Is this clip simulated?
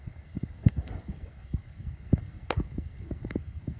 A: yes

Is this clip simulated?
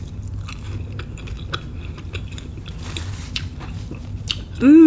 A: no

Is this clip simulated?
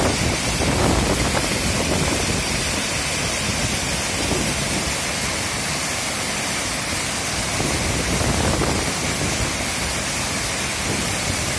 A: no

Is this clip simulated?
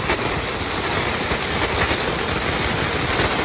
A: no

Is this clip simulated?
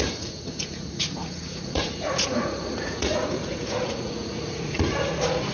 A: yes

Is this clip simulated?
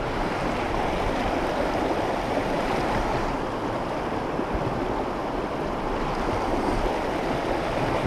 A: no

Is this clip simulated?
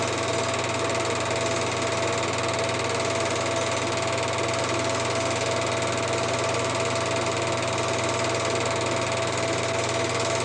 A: no